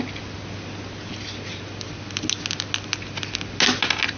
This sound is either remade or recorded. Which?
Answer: recorded